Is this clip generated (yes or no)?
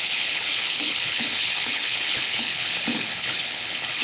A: yes